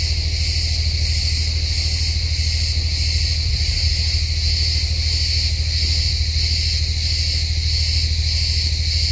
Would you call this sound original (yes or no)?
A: yes